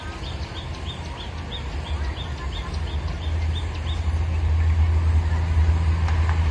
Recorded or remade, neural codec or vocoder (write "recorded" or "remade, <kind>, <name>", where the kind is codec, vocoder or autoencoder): recorded